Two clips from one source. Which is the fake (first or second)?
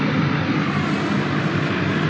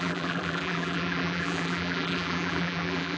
second